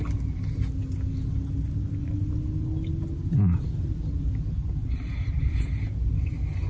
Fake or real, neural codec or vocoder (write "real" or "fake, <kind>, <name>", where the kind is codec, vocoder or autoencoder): real